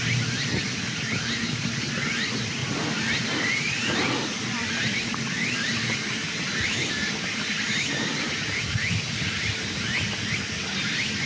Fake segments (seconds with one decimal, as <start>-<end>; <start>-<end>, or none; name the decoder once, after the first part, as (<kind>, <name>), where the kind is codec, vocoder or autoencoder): none